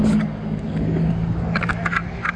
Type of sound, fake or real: fake